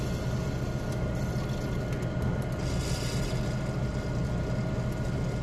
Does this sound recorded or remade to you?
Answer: recorded